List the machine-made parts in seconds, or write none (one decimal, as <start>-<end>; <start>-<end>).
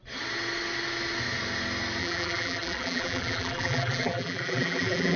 2.0-5.2